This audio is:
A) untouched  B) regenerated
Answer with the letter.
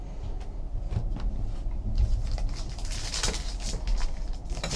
A